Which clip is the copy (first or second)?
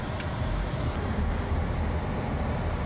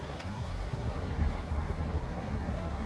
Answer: second